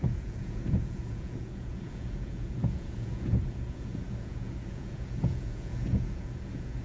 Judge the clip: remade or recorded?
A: remade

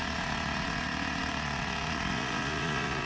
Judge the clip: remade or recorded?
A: remade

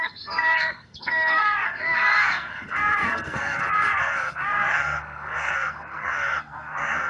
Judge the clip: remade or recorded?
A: remade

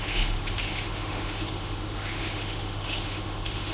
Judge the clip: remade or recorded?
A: remade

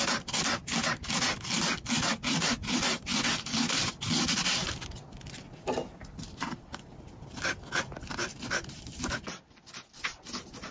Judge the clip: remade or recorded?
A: recorded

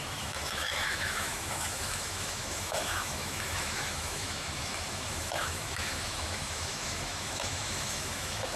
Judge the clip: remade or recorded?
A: remade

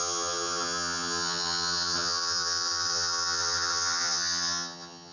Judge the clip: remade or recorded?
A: remade